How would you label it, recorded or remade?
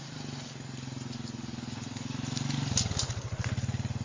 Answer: recorded